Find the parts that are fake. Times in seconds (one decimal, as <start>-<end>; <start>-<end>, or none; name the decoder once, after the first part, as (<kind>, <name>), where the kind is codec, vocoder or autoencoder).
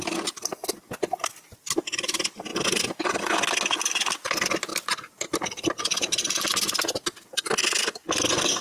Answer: 4.7-6.5 (vocoder, BigVGAN v2)